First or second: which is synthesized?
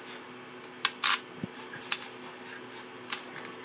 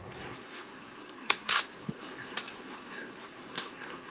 second